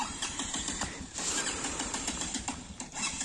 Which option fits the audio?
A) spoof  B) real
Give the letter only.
A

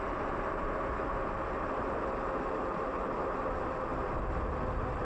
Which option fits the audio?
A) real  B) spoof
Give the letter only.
A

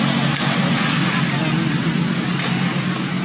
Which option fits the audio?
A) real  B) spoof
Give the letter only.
A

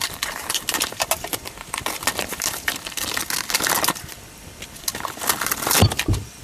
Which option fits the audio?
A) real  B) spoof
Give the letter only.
B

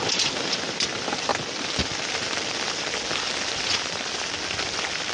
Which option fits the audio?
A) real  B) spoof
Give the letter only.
A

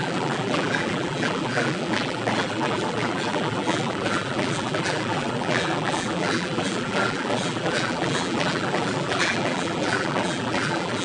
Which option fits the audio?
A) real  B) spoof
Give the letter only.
B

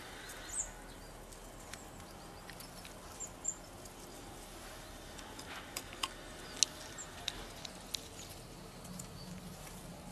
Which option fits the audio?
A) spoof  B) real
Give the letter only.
B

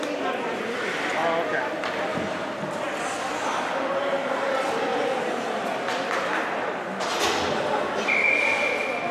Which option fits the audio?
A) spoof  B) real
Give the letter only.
B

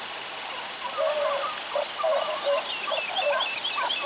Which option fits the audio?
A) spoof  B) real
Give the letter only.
B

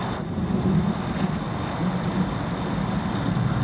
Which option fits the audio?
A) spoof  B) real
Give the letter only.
B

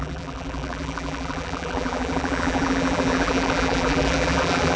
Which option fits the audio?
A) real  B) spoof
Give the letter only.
B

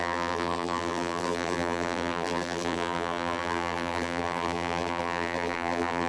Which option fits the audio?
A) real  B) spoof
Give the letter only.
B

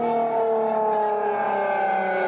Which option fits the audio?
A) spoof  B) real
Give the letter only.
B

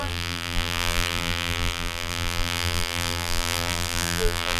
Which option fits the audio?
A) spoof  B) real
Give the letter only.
A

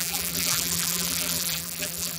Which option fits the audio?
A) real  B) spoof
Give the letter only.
B